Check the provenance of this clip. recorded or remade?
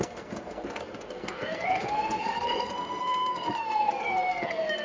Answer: remade